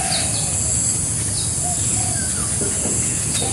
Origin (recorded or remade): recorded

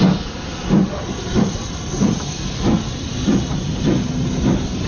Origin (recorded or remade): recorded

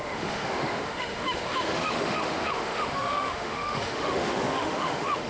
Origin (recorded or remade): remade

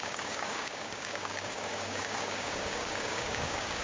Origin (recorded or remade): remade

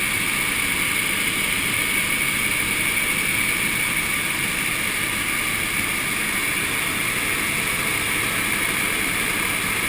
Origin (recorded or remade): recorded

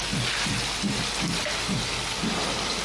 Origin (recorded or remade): recorded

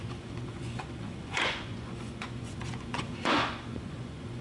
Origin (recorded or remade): remade